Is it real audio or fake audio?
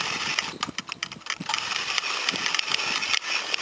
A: real